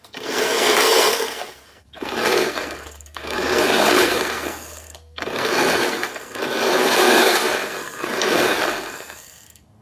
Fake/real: fake